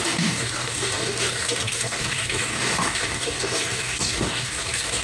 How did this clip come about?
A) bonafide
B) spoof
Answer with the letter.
B